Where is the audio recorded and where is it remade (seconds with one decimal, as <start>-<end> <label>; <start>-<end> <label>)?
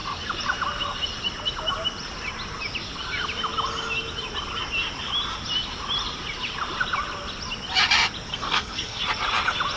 0.0-8.3 recorded; 8.3-9.0 remade; 9.0-9.8 recorded